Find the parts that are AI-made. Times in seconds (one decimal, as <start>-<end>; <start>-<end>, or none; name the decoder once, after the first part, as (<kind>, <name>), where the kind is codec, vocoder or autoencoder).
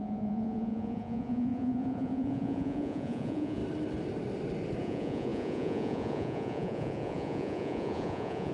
0.0-3.6 (vocoder, Vocos); 4.8-8.5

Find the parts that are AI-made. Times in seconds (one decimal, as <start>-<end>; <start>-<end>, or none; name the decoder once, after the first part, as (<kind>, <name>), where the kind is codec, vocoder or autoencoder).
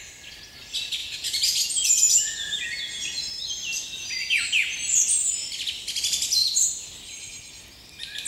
1.0-3.2 (vocoder, Vocos)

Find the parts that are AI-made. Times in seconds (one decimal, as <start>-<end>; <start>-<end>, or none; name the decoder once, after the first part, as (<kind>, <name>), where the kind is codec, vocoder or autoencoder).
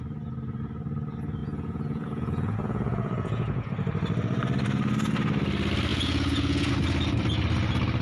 1.4-3.7 (vocoder, Vocos); 5.9-6.7